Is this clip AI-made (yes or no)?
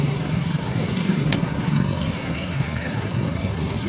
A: yes